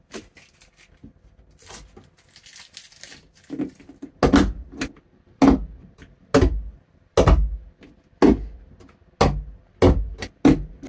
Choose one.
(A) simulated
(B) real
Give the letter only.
B